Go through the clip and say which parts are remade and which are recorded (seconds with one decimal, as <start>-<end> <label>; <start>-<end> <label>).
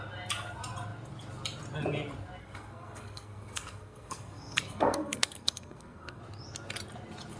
0.0-2.4 recorded; 2.4-6.2 remade; 6.2-7.4 recorded